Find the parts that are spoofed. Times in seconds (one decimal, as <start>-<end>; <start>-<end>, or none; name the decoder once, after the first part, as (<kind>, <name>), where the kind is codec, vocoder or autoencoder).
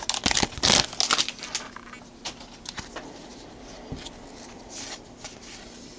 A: 2.1-2.9 (vocoder, BigVGAN v2); 3.3-4.0